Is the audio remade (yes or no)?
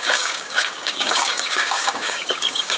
yes